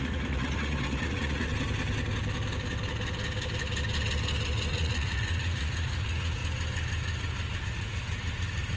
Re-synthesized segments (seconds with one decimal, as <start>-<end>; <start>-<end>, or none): 0.0-1.5; 4.7-6.4; 7.6-8.8

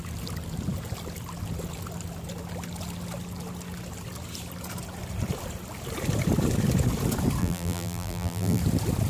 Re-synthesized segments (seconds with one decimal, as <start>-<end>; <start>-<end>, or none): 7.4-8.6